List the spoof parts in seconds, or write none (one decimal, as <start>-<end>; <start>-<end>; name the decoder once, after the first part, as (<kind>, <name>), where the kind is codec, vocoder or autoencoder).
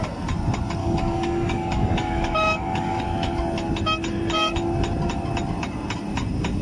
0.8-3.0 (codec, DAC)